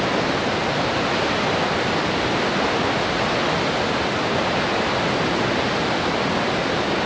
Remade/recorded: recorded